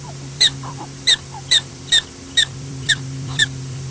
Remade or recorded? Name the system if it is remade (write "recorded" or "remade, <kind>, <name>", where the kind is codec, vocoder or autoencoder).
remade, vocoder, BigVGAN v2